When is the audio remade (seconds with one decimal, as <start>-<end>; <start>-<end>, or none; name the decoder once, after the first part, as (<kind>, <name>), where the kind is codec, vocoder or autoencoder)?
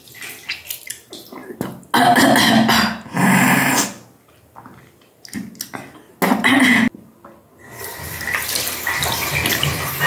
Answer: none